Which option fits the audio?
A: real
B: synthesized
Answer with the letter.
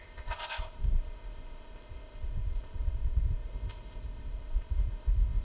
B